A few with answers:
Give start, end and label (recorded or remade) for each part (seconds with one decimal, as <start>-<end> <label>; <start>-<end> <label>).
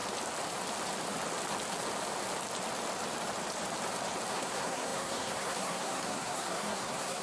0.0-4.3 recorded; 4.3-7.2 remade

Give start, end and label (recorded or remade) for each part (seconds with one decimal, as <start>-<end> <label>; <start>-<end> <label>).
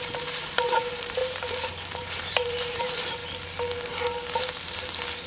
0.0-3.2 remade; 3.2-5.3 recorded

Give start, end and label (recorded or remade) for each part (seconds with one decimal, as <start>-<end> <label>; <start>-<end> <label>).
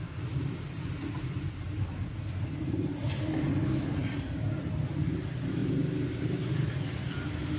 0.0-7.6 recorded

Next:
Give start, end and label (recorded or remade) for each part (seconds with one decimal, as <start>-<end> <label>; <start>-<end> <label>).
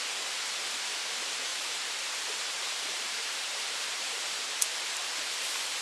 0.0-1.5 recorded; 1.5-4.2 remade; 4.2-5.8 recorded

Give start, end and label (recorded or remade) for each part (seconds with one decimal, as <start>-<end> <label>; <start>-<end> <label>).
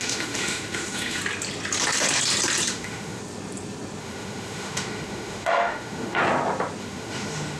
0.0-1.2 remade; 1.2-2.7 recorded; 2.7-3.2 remade; 3.2-4.0 recorded; 4.0-6.2 remade; 6.2-6.8 recorded; 6.8-7.6 remade